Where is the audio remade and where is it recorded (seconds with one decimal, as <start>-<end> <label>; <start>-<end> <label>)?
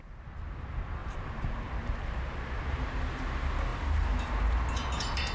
0.0-1.0 recorded; 1.0-2.8 remade; 2.8-3.7 recorded; 3.7-4.3 remade; 4.3-5.3 recorded